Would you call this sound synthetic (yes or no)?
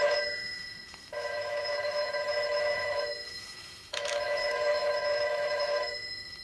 yes